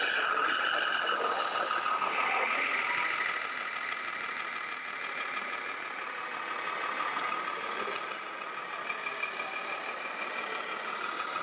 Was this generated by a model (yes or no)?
no